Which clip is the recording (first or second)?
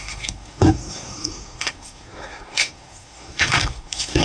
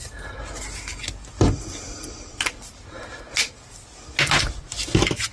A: second